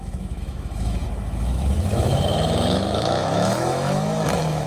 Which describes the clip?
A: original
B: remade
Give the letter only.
B